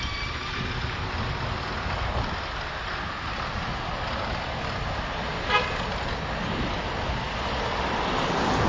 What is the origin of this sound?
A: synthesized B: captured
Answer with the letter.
B